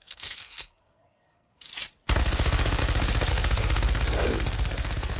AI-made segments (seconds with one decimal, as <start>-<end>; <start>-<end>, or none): 0.0-1.7; 2.2-2.8; 3.3-5.2